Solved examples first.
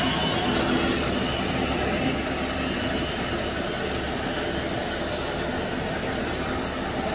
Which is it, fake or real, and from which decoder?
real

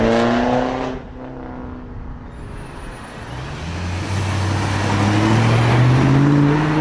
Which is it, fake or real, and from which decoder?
real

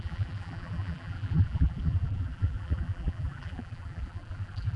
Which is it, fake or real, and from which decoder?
fake, vocoder, BigVGAN v2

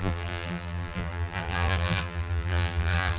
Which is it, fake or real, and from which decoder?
fake, vocoder, BigVGAN v2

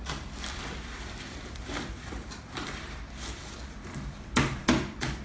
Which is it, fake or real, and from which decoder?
fake, vocoder, BigVGAN v2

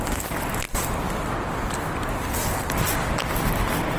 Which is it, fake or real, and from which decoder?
real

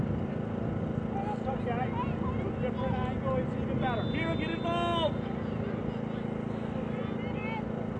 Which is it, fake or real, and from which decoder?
real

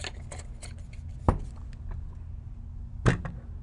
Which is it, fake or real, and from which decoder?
real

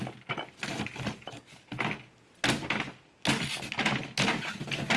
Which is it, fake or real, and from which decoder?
real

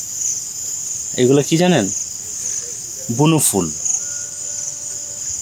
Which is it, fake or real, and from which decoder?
real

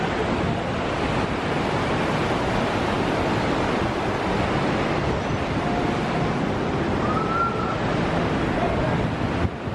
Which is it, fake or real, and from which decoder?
real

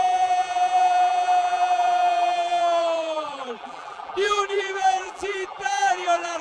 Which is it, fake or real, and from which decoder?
fake, vocoder, BigVGAN v2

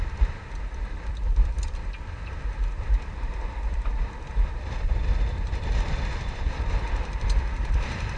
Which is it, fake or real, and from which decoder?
fake, vocoder, BigVGAN v2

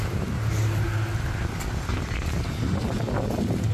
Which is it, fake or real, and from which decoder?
real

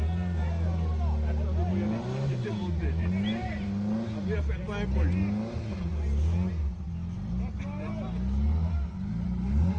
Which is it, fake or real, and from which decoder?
real